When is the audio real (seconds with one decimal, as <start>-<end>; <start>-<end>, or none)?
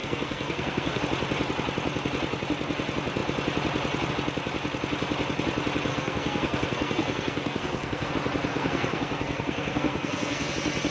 1.0-5.9; 8.1-8.5; 10.5-10.9